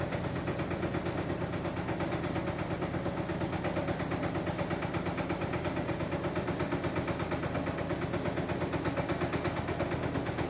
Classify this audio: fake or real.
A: real